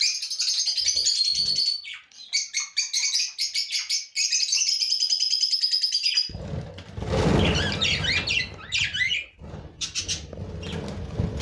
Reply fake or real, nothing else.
real